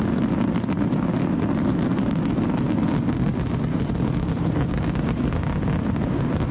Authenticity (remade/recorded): recorded